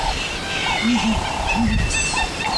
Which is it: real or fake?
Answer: real